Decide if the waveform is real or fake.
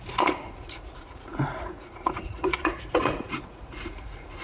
fake